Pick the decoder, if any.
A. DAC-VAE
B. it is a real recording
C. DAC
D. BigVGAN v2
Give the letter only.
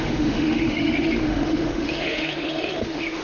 A